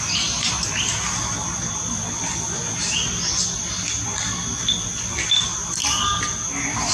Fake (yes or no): no